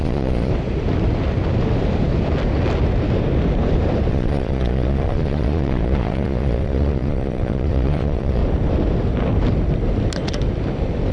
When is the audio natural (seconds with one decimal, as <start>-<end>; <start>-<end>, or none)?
0.5-4.1; 8.4-11.1